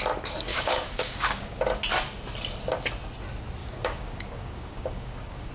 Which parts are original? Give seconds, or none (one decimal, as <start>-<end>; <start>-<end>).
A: 0.0-0.5; 1.6-3.6